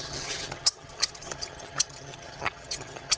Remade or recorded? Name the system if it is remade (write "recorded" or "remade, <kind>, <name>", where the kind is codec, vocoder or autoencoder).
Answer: remade, vocoder, HiFi-GAN